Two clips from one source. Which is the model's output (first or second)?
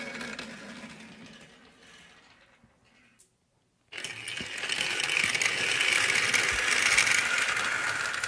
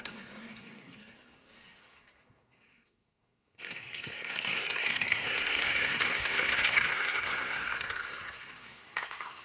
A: second